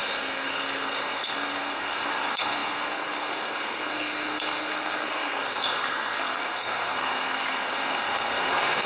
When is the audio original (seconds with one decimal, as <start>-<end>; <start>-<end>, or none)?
none